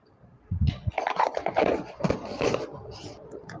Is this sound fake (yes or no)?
yes